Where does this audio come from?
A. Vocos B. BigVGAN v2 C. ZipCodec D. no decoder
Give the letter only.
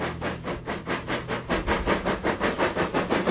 D